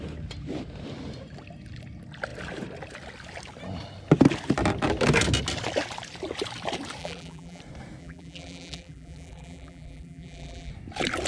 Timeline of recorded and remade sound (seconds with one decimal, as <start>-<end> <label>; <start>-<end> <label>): 0.0-7.0 recorded; 7.0-7.6 remade; 7.6-8.0 recorded; 8.0-10.7 remade; 10.7-11.3 recorded